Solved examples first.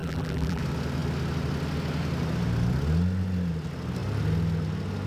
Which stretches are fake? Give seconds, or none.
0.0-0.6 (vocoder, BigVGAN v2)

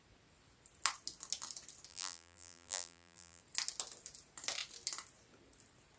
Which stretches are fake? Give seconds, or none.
1.9-3.4 (vocoder, BigVGAN v2)